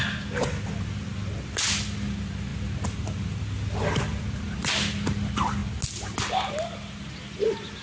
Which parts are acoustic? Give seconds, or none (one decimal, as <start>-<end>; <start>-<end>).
0.0-7.8

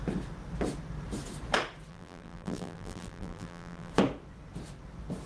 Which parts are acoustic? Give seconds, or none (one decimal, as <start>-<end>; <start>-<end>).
0.0-1.9; 3.9-5.3

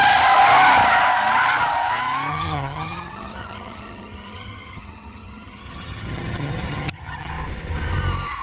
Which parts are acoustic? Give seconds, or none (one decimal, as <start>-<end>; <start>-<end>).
0.0-2.3; 7.3-8.4